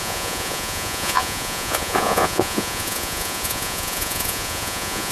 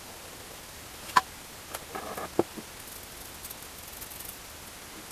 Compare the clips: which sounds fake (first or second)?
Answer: first